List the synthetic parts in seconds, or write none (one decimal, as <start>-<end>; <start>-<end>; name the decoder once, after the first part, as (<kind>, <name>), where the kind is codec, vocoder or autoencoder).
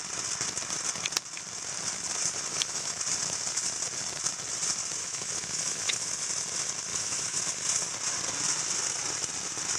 2.5-3.0 (autoencoder, DAC-VAE); 5.0-6.1; 6.9-7.4